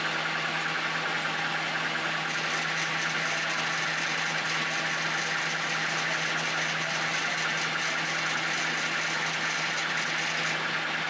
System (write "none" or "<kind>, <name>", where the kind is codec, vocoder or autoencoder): none